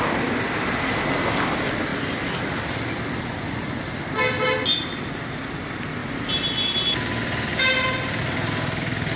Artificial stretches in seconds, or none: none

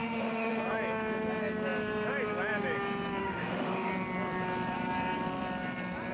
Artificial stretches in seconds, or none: 0.0-0.6 (autoencoder, DAC-VAE); 3.2-3.9

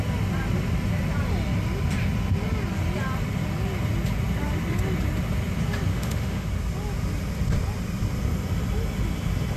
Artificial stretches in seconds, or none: 5.9-6.5 (autoencoder, DAC-VAE)

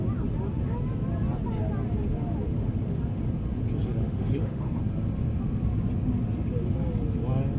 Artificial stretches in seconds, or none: 4.0-4.8 (autoencoder, DAC-VAE)